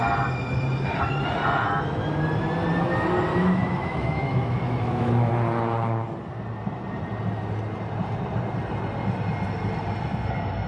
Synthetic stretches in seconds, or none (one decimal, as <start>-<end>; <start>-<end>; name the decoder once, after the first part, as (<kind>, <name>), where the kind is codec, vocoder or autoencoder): 3.3-5.3 (autoencoder, DAC-VAE)